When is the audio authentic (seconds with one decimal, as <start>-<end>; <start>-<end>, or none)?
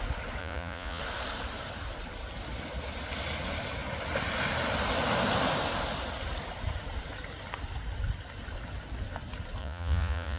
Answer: 0.0-0.4; 1.0-9.6